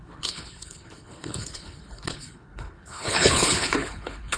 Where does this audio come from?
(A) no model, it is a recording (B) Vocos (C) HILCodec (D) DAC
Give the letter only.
C